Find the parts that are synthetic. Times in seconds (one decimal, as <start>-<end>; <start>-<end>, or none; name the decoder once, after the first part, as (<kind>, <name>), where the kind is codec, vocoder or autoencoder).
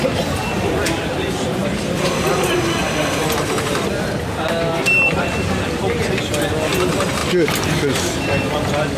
none